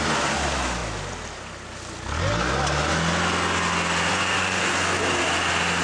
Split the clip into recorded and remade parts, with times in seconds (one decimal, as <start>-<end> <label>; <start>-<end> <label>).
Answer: 0.0-4.1 recorded; 4.1-4.6 remade; 4.6-5.8 recorded